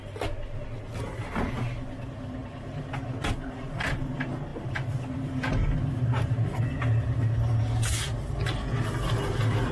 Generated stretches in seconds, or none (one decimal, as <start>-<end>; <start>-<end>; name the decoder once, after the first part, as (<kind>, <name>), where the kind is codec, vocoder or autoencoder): 2.4-3.7 (vocoder, BigVGAN v2); 4.5-6.6